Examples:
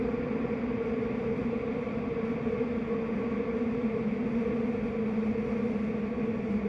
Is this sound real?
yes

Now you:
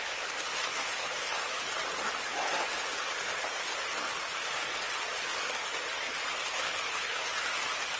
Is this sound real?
yes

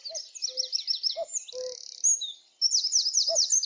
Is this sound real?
yes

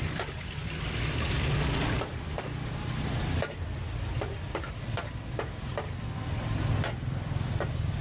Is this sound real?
no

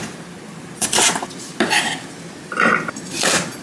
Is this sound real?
yes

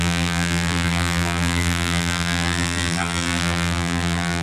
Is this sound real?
no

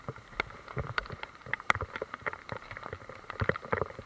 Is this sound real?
no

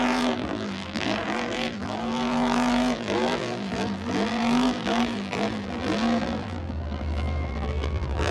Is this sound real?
no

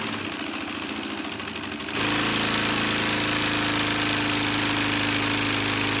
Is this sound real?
yes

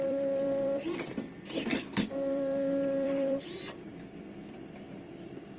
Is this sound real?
no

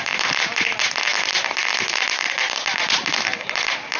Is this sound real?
yes